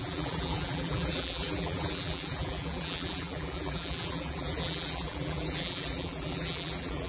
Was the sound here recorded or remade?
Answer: remade